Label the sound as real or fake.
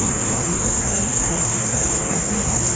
fake